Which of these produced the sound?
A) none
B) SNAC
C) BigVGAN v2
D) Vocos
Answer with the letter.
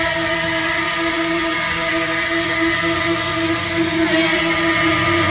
D